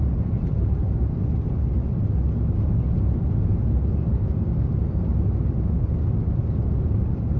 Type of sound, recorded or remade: recorded